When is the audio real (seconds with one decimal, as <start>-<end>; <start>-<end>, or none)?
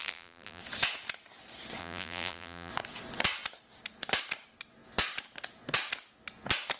0.6-1.8; 2.7-6.8